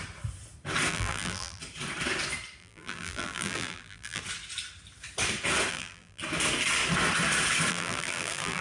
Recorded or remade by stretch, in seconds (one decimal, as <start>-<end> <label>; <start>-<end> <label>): 0.0-0.9 recorded; 0.9-1.6 remade; 1.6-2.6 recorded; 2.6-4.2 remade; 4.2-5.7 recorded; 5.7-6.2 remade; 6.2-7.7 recorded; 7.7-8.6 remade

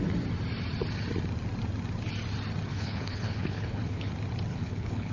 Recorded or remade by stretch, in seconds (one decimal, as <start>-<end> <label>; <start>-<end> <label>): 0.0-2.7 recorded; 2.7-4.1 remade; 4.1-4.5 recorded; 4.5-5.1 remade